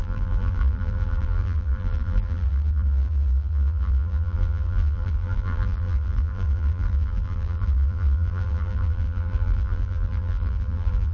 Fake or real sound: fake